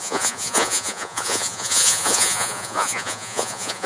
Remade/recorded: remade